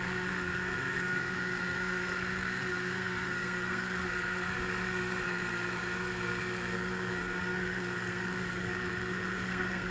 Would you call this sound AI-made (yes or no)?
yes